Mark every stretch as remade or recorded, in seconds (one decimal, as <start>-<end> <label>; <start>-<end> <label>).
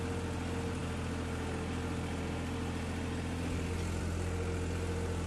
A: 0.0-5.3 recorded